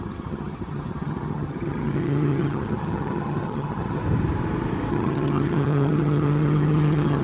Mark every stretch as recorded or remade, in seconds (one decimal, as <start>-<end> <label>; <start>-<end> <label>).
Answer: 0.0-4.0 remade; 4.0-4.9 recorded; 4.9-7.2 remade